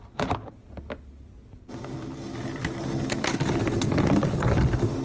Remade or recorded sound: recorded